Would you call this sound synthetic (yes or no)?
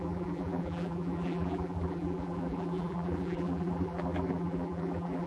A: yes